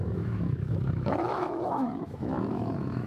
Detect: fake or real fake